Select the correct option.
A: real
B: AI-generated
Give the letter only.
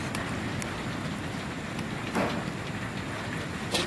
A